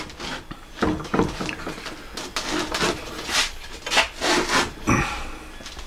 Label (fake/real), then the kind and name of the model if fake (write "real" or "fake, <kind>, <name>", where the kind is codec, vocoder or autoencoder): real